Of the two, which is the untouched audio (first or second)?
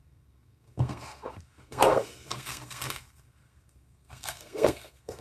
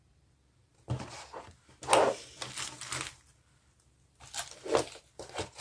second